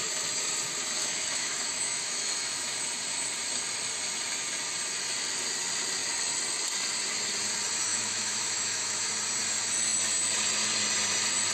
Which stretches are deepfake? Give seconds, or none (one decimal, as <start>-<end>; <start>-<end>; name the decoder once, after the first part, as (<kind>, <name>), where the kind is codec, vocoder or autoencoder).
1.0-2.7 (autoencoder, DAC-VAE); 7.9-9.1